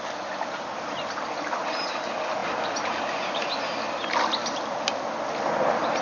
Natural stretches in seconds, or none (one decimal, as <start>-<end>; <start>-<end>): 0.0-6.0